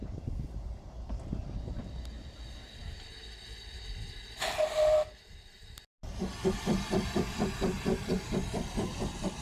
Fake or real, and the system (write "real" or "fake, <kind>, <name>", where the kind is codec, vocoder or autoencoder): real